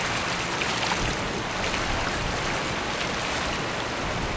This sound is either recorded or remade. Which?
recorded